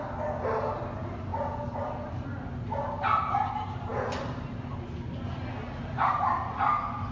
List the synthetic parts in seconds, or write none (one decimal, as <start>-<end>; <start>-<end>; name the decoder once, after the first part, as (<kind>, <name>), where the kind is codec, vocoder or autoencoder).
none